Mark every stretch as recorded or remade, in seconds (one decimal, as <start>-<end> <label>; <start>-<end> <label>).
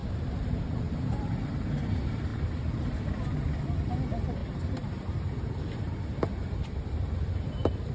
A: 0.0-0.6 remade; 0.6-4.4 recorded; 4.4-5.4 remade; 5.4-7.9 recorded